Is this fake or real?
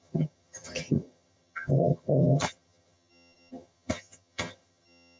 fake